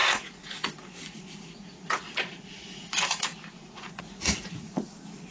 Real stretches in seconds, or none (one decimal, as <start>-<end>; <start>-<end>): 3.2-3.6; 4.8-5.3